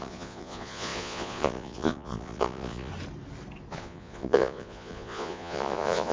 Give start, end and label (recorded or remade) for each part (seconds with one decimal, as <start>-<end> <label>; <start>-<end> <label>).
0.0-2.9 remade; 2.9-3.7 recorded; 3.7-6.1 remade